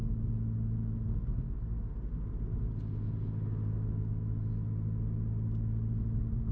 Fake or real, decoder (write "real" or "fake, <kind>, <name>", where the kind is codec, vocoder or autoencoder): real